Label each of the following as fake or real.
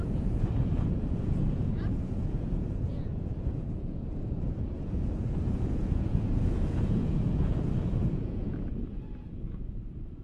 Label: fake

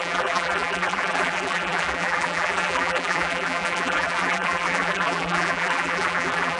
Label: fake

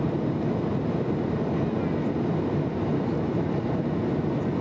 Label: real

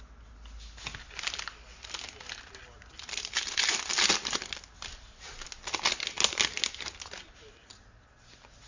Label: real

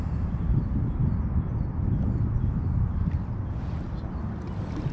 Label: real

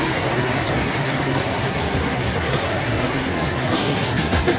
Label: fake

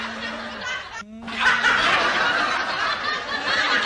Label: real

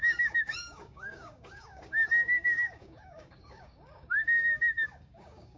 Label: fake